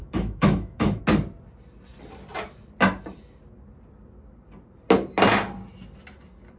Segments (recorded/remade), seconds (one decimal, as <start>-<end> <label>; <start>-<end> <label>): 0.0-1.0 remade; 1.0-6.6 recorded